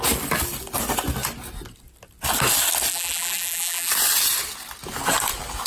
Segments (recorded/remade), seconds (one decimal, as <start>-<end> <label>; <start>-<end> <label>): 0.0-2.9 recorded; 2.9-3.9 remade; 3.9-5.7 recorded